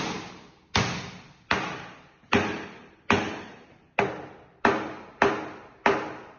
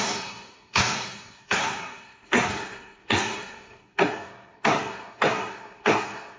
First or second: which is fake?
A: second